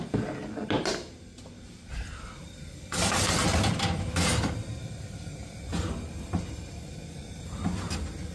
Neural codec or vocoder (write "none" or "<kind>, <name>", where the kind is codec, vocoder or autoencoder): none